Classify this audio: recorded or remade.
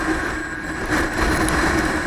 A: recorded